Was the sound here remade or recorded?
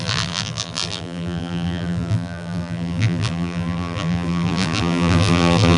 remade